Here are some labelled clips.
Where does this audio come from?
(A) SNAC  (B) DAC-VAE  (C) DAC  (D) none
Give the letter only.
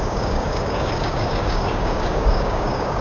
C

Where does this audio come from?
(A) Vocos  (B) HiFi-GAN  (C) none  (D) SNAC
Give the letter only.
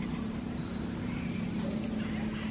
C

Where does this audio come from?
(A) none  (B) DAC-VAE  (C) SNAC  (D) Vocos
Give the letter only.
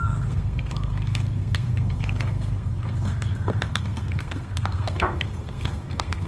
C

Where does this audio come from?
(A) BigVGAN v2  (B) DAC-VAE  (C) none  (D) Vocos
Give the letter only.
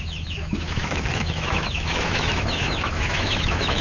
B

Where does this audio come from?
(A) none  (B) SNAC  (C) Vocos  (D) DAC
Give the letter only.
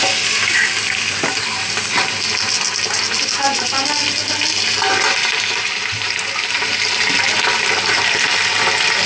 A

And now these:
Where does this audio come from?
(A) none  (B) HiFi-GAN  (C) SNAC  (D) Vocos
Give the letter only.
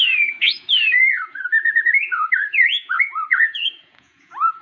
D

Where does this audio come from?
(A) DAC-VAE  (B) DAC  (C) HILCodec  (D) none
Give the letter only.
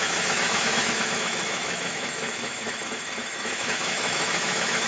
A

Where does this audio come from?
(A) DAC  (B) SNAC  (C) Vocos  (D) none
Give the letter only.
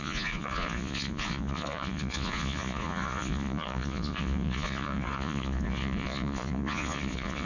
C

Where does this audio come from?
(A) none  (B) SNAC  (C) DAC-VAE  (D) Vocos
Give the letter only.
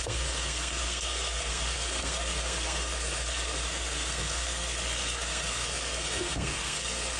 B